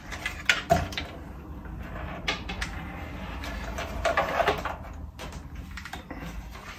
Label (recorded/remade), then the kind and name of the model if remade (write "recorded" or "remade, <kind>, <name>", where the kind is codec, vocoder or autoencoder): recorded